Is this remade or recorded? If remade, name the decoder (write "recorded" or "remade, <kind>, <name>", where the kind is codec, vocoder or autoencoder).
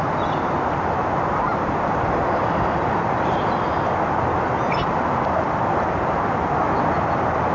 recorded